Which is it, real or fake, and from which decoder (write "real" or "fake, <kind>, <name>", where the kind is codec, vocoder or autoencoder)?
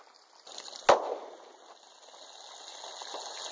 real